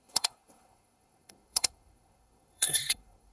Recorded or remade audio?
remade